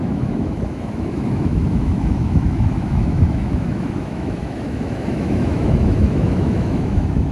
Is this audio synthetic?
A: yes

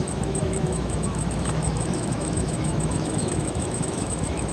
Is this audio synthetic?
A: yes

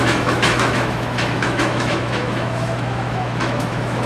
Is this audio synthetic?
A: yes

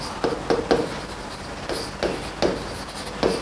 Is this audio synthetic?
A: no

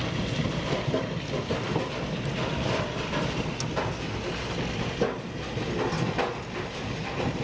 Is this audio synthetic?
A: no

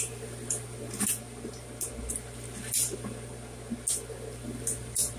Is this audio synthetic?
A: no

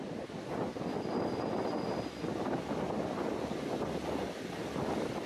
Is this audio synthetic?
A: no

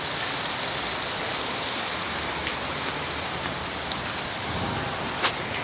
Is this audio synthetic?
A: no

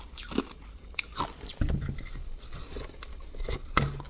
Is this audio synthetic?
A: no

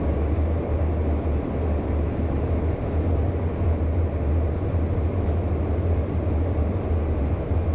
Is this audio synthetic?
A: no